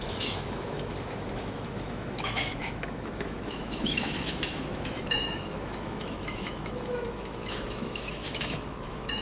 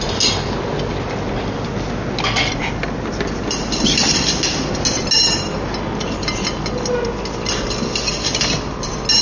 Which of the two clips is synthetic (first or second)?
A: first